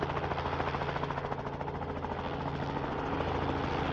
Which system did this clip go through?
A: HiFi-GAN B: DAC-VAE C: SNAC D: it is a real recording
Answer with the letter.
D